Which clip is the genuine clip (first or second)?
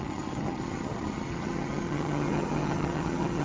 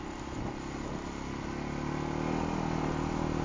second